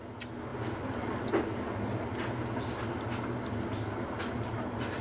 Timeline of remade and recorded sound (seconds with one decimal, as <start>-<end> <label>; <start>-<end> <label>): 0.0-5.0 recorded